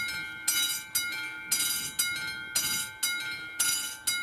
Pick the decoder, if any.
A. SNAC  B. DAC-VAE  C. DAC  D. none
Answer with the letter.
D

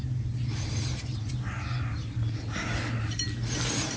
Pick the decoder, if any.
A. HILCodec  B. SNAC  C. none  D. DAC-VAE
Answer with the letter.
C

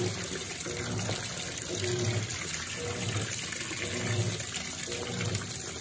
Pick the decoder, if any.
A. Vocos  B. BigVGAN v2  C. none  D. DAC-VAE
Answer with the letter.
C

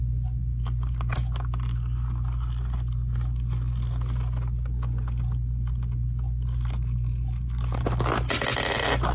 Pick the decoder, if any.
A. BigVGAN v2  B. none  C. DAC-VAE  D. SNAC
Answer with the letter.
B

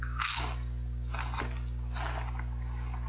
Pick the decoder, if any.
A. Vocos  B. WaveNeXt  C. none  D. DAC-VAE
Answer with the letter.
C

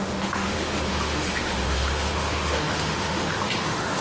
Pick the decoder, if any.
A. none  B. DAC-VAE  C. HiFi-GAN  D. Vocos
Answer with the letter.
B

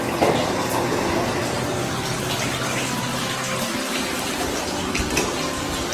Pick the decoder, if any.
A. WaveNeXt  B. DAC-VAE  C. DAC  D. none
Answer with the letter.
D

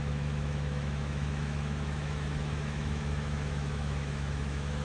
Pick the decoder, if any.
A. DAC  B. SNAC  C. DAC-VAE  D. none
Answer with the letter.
C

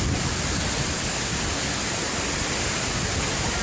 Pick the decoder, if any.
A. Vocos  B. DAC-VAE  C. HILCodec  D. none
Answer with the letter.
D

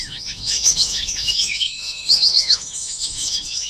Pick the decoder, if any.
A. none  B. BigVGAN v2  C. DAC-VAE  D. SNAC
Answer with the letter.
C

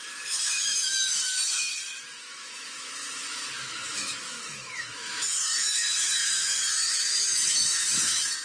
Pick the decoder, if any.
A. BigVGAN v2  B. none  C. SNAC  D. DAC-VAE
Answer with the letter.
D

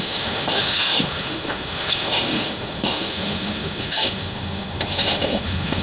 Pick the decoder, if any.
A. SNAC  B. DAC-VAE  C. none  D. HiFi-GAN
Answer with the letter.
B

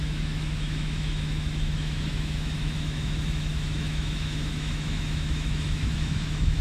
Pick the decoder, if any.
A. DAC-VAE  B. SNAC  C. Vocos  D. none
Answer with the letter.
A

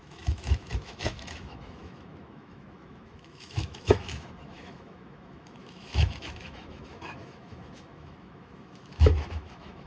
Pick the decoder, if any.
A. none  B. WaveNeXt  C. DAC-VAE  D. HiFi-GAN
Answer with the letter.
C